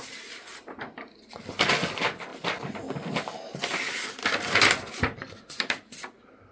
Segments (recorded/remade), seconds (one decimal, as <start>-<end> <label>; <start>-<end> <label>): 0.0-6.5 recorded